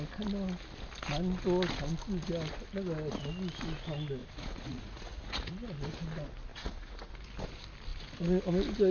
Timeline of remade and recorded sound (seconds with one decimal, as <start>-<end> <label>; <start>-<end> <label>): 0.0-4.2 recorded; 4.2-5.5 remade; 5.5-6.5 recorded; 6.5-7.1 remade; 7.1-8.9 recorded

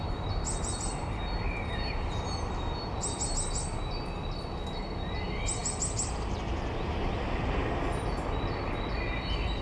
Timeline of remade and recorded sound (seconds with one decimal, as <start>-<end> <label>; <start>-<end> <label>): 0.0-9.6 recorded

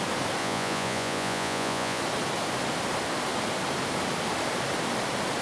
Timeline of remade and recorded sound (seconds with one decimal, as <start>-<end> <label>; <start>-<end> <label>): 0.0-0.4 recorded; 0.4-2.0 remade; 2.0-5.4 recorded

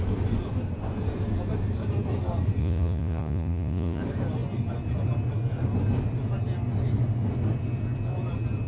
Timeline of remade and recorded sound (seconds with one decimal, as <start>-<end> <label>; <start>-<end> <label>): 0.0-2.6 recorded; 2.6-4.0 remade; 4.0-8.7 recorded

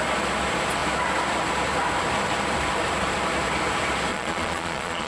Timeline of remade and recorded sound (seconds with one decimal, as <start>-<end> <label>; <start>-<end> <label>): 0.0-4.1 recorded; 4.1-5.1 remade

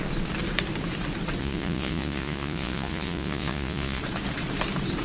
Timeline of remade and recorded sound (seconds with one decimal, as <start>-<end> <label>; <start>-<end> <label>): 0.0-1.4 recorded; 1.4-4.0 remade; 4.0-5.0 recorded